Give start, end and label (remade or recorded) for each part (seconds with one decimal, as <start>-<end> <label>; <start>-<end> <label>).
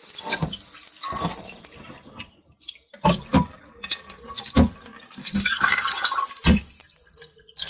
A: 0.0-5.2 recorded; 5.2-6.0 remade; 6.0-7.7 recorded